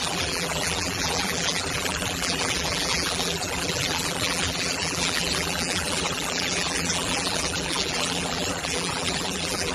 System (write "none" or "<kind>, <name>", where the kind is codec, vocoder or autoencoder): vocoder, BigVGAN v2